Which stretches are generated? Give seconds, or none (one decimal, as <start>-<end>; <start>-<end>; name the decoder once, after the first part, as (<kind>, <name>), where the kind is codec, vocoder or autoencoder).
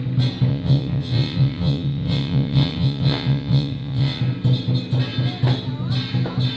0.5-4.2 (vocoder, WaveNeXt)